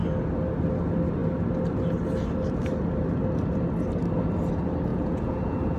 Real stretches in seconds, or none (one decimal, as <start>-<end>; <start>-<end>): 0.0-4.9